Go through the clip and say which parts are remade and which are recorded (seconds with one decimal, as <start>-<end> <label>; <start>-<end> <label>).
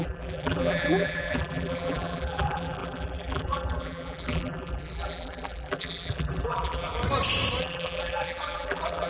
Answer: 0.0-7.0 remade; 7.0-7.6 recorded; 7.6-9.1 remade